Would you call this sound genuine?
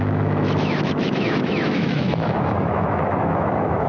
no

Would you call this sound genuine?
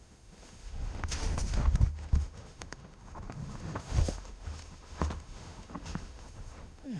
no